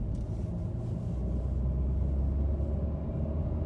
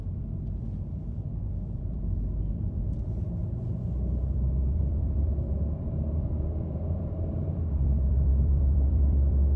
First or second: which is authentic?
first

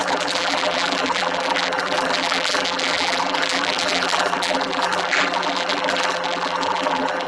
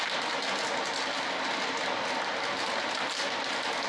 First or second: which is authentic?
second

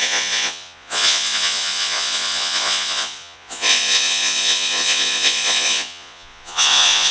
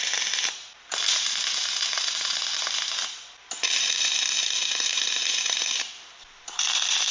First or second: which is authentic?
second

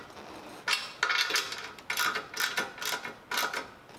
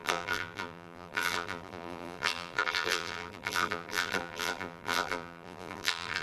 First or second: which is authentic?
first